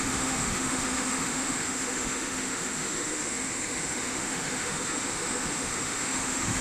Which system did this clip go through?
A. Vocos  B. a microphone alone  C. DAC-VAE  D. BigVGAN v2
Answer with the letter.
C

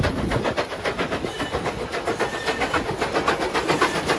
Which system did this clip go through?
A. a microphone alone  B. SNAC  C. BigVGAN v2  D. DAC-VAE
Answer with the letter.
A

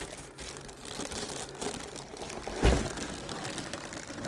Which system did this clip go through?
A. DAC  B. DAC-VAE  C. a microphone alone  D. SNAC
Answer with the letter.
C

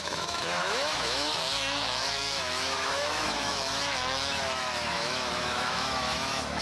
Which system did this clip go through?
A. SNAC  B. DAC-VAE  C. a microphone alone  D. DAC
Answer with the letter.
B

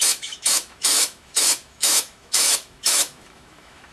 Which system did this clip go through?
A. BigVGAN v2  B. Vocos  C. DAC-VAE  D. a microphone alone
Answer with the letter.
C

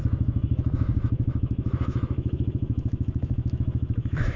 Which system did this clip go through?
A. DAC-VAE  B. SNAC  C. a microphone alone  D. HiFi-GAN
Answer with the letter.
A